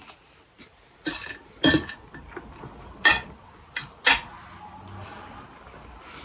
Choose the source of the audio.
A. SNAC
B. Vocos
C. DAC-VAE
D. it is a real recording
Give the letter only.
D